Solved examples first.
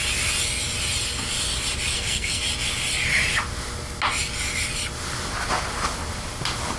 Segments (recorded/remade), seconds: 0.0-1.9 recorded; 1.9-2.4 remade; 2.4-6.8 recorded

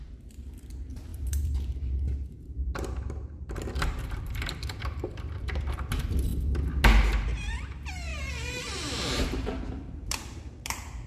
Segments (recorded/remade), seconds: 0.0-6.3 remade; 6.3-7.2 recorded; 7.2-11.1 remade

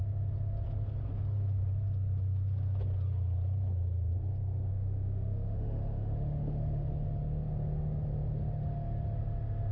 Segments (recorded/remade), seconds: 0.0-4.7 recorded; 4.7-6.9 remade; 6.9-9.7 recorded